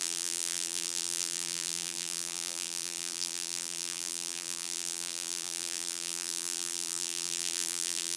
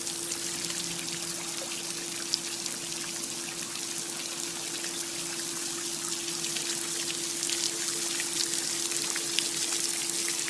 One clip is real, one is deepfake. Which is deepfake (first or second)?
first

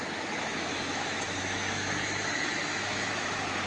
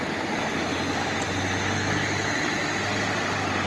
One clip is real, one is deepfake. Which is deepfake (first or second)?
first